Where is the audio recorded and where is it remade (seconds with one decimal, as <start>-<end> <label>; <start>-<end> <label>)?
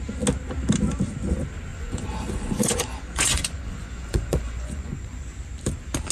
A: 0.0-1.7 recorded; 1.7-5.4 remade; 5.4-6.1 recorded